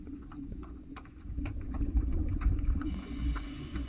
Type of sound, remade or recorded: remade